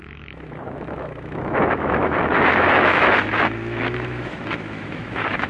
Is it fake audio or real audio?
fake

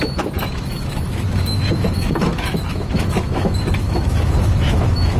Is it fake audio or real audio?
fake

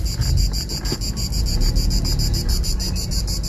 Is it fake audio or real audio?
real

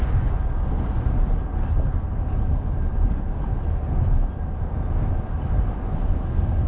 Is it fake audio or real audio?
real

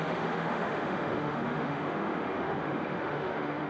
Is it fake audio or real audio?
fake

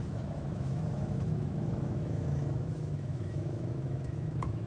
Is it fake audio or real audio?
fake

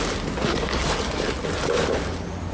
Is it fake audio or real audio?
real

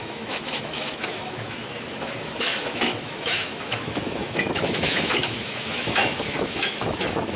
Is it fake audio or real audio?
fake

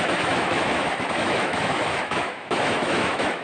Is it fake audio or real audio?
fake